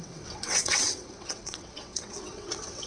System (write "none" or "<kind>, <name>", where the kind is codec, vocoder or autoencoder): vocoder, WaveNeXt